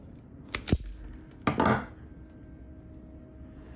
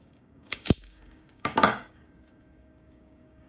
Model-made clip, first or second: second